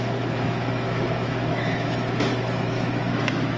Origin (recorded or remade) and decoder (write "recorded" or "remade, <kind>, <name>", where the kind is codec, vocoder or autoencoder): remade, autoencoder, DAC-VAE